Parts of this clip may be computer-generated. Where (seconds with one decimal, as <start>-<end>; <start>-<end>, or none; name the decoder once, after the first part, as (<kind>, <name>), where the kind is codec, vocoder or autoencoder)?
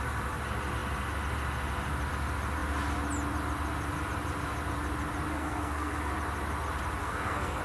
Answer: 5.3-6.1 (codec, SNAC); 7.0-7.6